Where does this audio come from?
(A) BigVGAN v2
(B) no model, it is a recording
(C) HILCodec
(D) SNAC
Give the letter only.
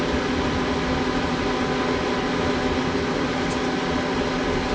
B